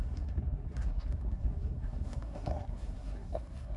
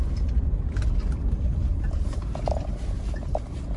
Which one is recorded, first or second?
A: second